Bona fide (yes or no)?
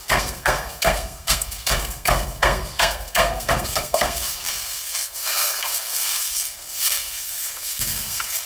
no